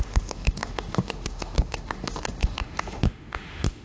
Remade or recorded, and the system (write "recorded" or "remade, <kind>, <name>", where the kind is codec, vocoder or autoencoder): remade, autoencoder, DAC-VAE